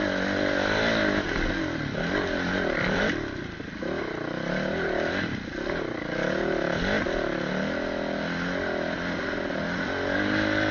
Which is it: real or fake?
real